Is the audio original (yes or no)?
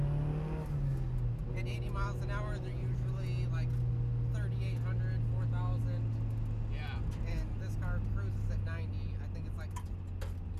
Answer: yes